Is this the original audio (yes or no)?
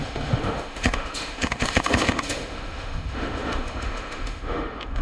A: no